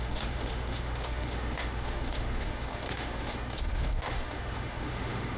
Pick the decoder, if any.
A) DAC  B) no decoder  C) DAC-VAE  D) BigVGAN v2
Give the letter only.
C